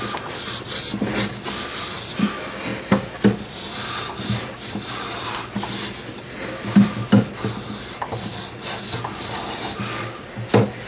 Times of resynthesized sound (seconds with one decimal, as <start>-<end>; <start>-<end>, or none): none